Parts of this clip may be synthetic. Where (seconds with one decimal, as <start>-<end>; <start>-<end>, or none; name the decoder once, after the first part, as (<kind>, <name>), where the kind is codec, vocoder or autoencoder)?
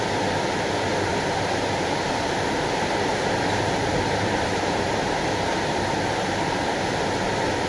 1.1-2.1 (vocoder, BigVGAN v2); 3.1-5.0